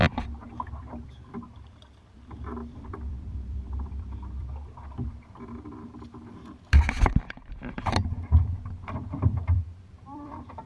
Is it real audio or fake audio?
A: fake